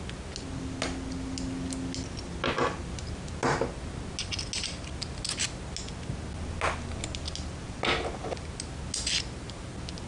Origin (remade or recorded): recorded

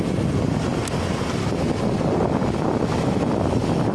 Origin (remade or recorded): recorded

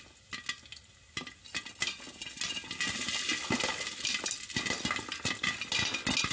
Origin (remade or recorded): recorded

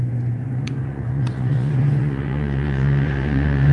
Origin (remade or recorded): remade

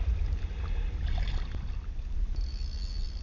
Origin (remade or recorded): recorded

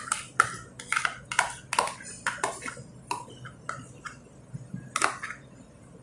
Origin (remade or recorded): recorded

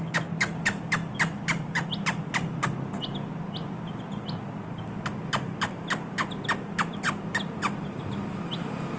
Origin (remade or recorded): recorded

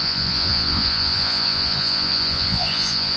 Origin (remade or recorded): remade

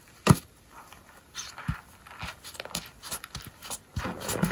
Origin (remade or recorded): recorded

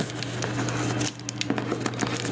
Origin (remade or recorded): recorded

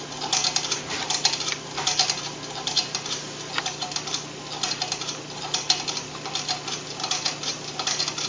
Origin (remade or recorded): recorded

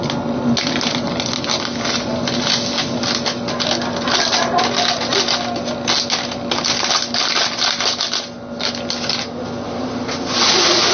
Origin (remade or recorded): recorded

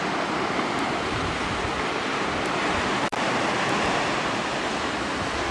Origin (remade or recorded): recorded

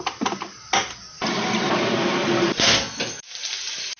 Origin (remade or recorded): recorded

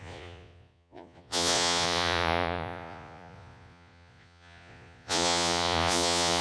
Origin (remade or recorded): remade